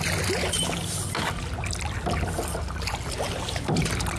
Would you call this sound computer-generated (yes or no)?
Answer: no